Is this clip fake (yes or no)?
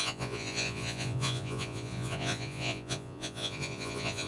yes